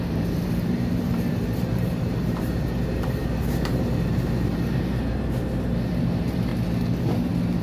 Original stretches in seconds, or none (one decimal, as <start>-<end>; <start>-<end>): 6.5-7.6